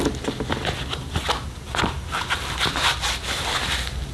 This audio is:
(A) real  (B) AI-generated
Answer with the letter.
A